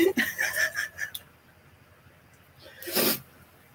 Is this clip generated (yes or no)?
no